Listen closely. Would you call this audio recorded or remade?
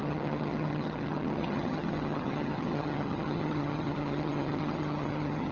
remade